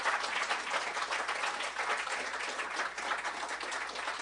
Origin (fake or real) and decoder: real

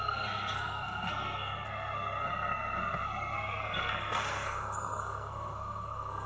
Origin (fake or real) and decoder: fake, codec, SNAC